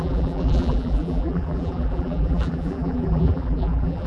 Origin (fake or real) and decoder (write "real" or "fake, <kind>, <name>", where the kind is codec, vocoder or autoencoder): fake, vocoder, BigVGAN v2